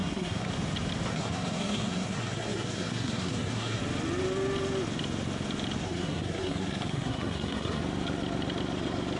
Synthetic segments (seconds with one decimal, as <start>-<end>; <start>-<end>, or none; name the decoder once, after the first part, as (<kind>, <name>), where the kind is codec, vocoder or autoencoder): 0.0-0.5 (codec, SNAC); 1.1-3.8; 5.8-7.8